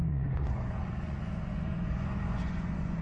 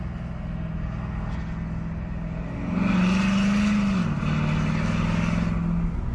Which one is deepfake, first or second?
first